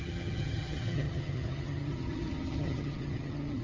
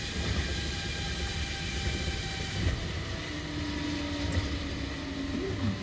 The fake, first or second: first